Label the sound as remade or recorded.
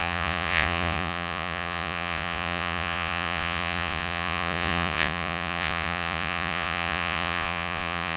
remade